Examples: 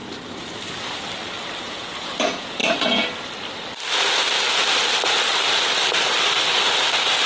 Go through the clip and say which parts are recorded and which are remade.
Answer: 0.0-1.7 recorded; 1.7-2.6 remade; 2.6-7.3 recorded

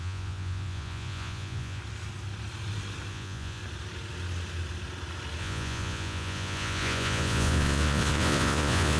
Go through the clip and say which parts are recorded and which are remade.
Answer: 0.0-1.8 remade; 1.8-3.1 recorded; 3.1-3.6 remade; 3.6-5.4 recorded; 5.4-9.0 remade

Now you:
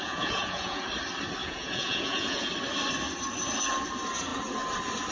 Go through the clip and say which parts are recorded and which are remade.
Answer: 0.0-0.8 remade; 0.8-1.4 recorded; 1.4-2.5 remade; 2.5-5.1 recorded